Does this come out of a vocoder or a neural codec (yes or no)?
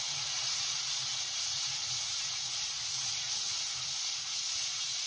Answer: yes